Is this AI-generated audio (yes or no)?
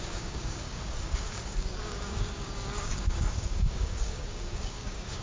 yes